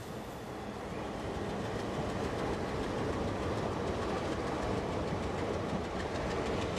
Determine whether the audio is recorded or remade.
recorded